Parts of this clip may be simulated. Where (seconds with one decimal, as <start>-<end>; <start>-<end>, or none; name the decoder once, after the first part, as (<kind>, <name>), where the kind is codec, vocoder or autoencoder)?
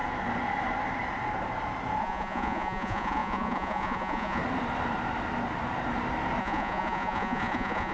2.0-4.4 (vocoder, Vocos); 6.4-7.9